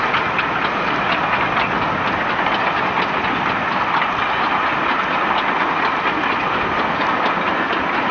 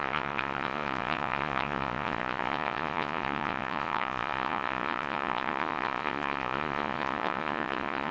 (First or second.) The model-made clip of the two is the second